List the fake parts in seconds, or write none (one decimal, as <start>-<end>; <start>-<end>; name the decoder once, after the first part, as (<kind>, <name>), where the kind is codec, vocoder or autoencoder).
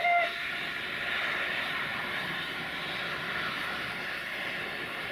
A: none